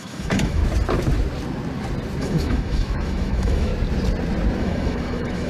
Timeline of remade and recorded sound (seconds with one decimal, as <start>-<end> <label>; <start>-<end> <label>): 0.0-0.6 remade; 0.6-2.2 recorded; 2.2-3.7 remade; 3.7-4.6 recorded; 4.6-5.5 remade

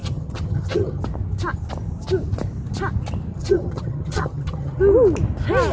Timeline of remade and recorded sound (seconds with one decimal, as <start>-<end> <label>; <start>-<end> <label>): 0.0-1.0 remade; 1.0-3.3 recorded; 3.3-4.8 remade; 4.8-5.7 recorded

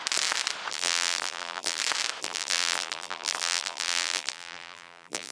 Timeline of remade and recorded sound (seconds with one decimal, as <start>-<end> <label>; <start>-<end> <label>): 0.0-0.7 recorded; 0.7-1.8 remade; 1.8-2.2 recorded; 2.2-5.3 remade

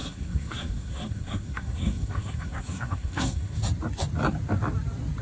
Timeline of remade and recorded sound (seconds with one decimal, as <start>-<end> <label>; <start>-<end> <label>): 0.0-3.6 remade; 3.6-5.2 recorded